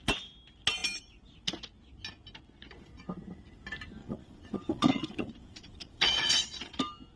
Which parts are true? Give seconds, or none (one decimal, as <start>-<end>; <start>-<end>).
0.0-4.0; 6.8-7.2